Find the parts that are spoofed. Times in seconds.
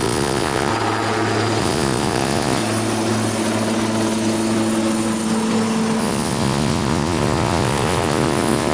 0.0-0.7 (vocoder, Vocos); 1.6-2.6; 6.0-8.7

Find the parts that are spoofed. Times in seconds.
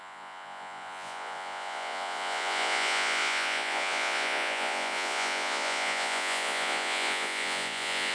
0.0-8.1 (vocoder, Vocos)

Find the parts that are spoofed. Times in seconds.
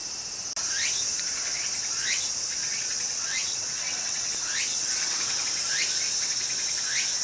2.6-4.3 (vocoder, WaveNeXt); 4.7-5.4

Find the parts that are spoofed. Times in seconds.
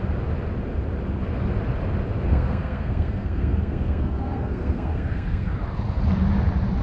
2.3-5.5 (codec, SNAC)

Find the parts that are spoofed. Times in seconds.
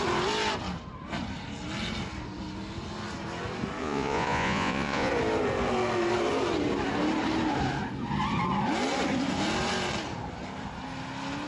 3.8-5.1 (vocoder, Vocos)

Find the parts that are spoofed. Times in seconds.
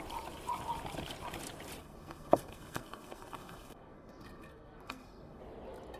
1.8-5.4 (codec, SNAC)